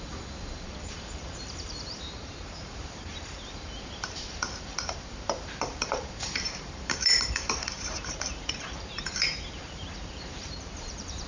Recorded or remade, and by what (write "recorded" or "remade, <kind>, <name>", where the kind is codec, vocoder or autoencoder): remade, vocoder, BigVGAN v2